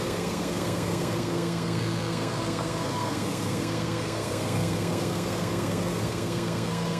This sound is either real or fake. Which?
fake